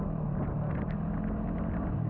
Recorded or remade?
recorded